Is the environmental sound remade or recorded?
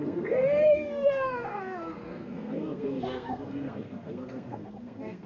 remade